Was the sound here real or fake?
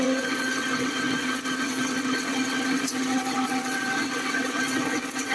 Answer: fake